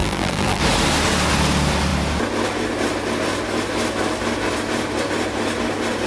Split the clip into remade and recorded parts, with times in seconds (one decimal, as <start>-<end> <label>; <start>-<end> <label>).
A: 0.0-0.6 remade; 0.6-6.1 recorded